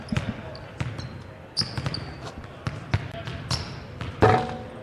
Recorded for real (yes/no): yes